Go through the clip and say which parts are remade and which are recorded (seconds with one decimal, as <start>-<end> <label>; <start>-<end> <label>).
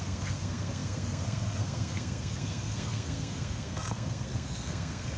0.0-5.2 remade